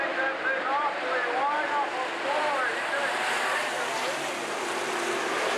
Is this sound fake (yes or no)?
no